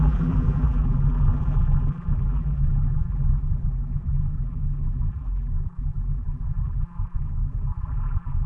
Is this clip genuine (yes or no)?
no